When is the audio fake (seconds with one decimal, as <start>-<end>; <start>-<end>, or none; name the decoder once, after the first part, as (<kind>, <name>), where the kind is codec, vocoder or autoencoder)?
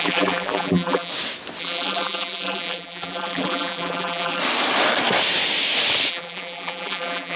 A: 0.0-1.1 (vocoder, BigVGAN v2); 1.6-4.4; 6.1-7.4